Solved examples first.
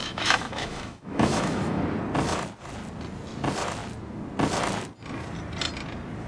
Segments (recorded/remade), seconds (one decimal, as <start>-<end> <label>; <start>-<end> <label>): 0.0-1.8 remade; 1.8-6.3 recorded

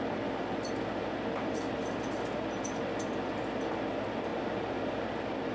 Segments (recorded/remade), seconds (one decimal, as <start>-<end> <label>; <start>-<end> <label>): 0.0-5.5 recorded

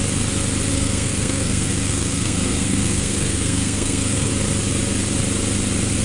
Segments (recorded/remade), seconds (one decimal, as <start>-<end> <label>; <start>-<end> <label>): 0.0-0.7 recorded; 0.7-4.3 remade; 4.3-6.0 recorded

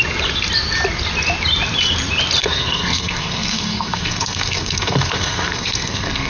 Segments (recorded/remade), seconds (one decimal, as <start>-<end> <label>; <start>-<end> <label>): 0.0-2.4 recorded; 2.4-6.3 remade